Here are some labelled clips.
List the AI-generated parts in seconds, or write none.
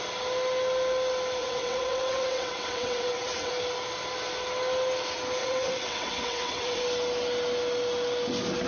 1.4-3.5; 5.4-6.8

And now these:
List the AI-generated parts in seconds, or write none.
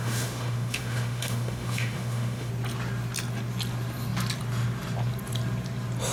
0.0-2.5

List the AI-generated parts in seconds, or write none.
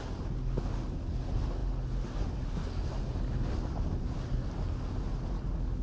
none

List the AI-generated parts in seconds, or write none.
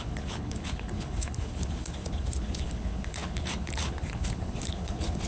0.0-5.3